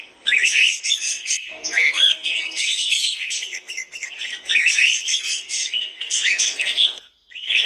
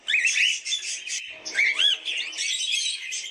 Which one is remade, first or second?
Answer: first